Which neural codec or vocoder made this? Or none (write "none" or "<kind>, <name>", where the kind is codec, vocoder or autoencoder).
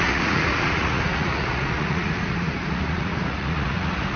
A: vocoder, Vocos